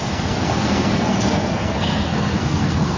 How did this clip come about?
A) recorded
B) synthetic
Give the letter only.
B